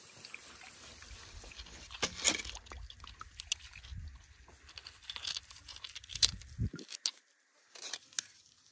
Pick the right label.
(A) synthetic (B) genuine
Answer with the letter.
B